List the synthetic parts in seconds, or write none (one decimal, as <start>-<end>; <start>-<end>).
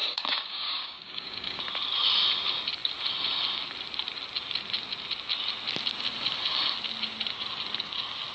0.0-1.6